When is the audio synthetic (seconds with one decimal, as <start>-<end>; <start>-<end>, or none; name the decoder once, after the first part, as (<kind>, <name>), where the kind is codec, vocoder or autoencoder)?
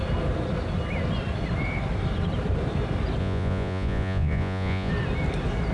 3.2-4.9 (vocoder, Vocos)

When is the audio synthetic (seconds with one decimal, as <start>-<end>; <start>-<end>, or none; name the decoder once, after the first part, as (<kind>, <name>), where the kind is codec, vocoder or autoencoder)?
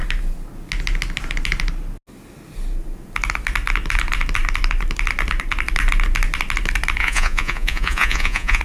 7.0-8.6 (vocoder, Vocos)